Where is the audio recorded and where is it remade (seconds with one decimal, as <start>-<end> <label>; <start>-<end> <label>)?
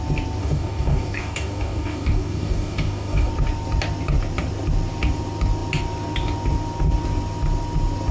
0.0-0.4 recorded; 0.4-3.3 remade; 3.3-8.1 recorded